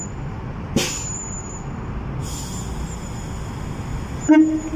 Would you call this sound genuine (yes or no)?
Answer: yes